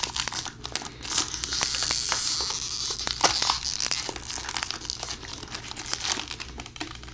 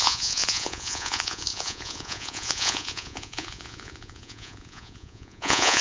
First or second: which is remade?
second